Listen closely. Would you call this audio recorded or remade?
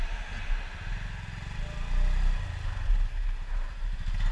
recorded